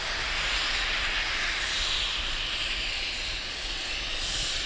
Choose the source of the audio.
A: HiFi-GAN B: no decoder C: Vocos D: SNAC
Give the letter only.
B